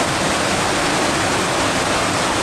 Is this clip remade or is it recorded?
recorded